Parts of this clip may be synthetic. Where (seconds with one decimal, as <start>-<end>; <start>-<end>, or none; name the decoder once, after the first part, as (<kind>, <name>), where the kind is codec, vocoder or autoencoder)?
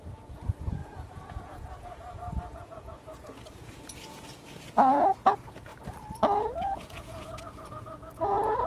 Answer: 0.0-5.7 (vocoder, Vocos); 6.4-8.7